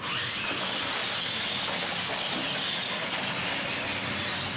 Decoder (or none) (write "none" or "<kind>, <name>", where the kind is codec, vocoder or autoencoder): none